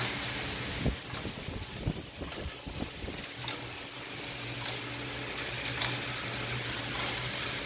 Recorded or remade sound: recorded